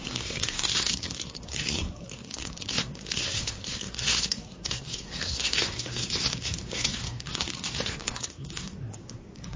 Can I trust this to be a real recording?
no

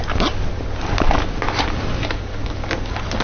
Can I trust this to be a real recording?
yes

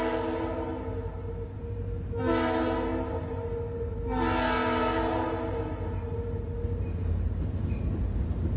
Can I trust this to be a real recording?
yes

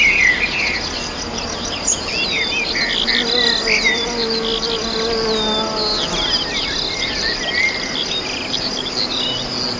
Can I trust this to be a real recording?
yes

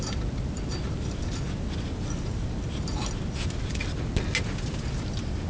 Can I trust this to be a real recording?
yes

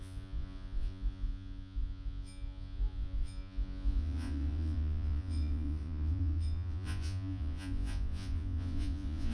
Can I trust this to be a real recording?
no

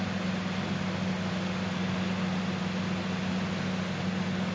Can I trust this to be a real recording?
yes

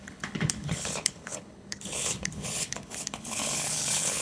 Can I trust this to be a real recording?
no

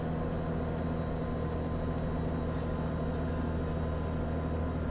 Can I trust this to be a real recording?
yes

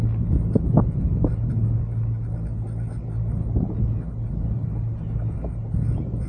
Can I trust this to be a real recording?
yes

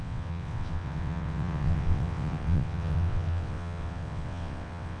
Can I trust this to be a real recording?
no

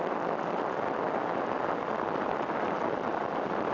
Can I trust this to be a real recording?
yes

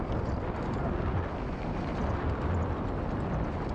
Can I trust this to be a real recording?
yes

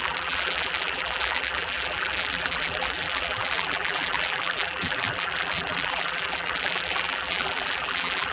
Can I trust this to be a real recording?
no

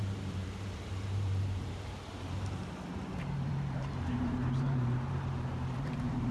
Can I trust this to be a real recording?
no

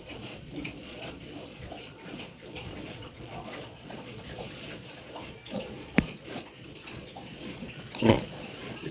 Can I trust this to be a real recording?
no